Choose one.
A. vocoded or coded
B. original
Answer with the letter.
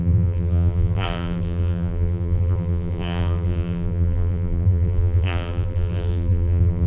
A